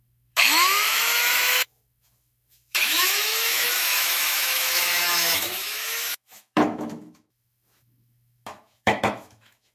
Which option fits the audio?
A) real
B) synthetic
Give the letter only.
B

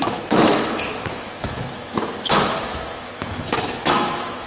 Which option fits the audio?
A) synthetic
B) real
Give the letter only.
A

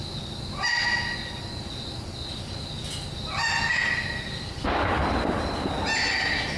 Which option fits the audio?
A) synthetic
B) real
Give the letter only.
B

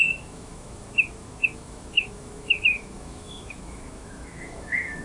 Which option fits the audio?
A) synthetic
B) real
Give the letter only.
A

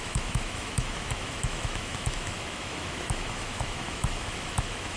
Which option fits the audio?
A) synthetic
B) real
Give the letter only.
A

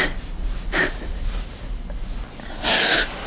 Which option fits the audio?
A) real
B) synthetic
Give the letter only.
A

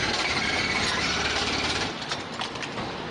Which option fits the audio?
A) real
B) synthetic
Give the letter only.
A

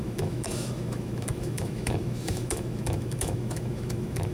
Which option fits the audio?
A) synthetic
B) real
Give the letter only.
A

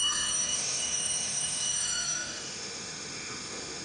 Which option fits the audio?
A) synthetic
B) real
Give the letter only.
A